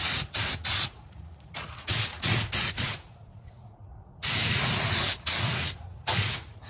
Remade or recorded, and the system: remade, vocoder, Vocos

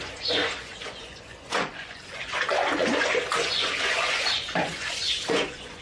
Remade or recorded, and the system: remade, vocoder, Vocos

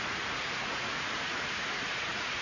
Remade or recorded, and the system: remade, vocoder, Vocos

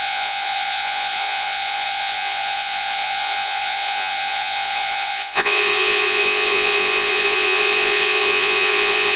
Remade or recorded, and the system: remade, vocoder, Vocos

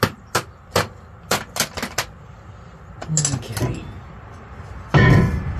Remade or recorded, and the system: recorded